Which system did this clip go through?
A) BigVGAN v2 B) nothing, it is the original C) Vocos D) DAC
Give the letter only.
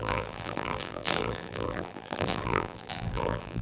A